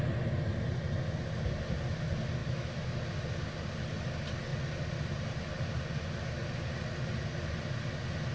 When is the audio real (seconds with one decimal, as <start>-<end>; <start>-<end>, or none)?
0.0-2.4; 2.9-8.3